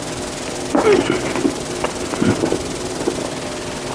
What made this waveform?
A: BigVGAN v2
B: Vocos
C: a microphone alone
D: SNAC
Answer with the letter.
C